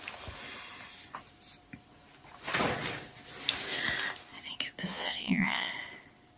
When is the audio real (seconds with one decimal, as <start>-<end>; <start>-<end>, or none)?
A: 0.0-4.9; 5.7-6.4

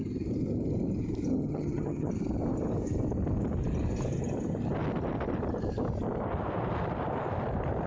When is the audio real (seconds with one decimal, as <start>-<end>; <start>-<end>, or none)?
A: 0.0-1.3; 2.1-7.9

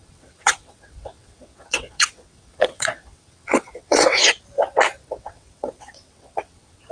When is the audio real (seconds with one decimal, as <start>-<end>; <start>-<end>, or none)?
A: 4.2-5.2

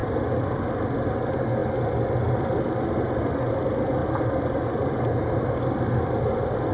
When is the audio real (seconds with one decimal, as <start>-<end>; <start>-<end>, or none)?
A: 0.7-4.0; 5.5-6.7